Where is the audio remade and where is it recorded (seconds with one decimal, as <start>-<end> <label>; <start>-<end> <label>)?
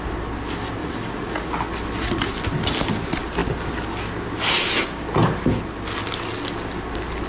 0.0-0.8 recorded; 0.8-1.5 remade; 1.5-7.3 recorded